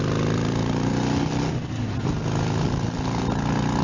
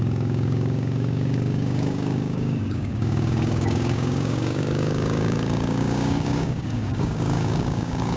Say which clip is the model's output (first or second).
second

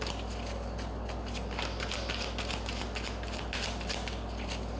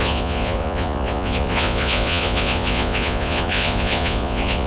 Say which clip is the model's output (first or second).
second